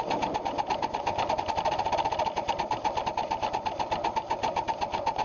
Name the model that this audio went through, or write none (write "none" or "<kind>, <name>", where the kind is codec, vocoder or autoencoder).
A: none